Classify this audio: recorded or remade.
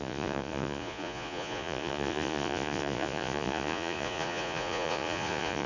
remade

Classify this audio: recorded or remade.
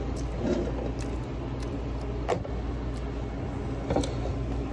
recorded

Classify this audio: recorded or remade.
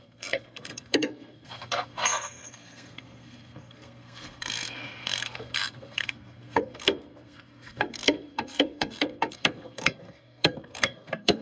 remade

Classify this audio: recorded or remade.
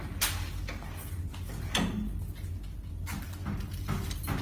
recorded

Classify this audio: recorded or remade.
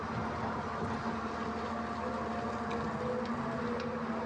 recorded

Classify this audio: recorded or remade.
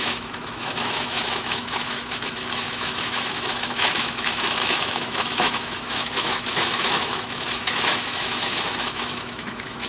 remade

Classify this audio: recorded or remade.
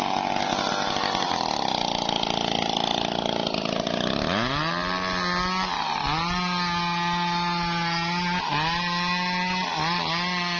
recorded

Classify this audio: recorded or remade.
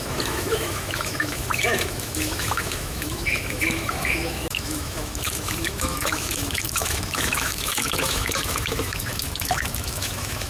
remade